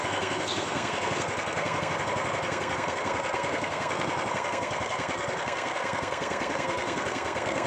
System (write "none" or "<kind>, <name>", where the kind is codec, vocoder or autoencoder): codec, SNAC